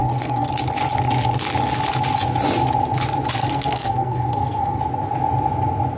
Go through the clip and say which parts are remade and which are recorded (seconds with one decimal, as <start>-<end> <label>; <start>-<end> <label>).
0.0-0.5 remade; 0.5-3.4 recorded; 3.4-4.8 remade; 4.8-6.0 recorded